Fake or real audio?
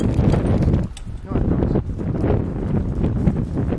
real